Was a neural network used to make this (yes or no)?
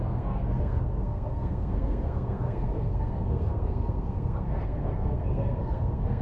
yes